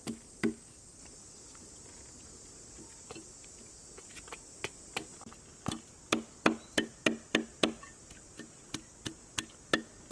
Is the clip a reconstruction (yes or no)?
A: no